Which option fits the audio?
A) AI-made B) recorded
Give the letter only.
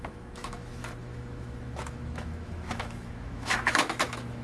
A